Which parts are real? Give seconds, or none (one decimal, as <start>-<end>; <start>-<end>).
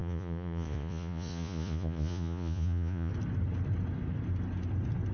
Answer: 3.1-5.1